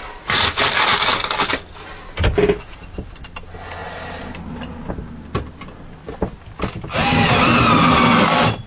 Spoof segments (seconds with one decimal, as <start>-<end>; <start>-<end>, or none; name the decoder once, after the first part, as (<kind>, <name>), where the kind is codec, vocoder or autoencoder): 0.0-0.8 (vocoder, BigVGAN v2)

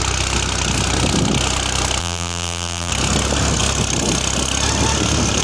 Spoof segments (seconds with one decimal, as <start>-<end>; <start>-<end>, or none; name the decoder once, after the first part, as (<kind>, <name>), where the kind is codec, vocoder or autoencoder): 2.0-2.9 (vocoder, BigVGAN v2)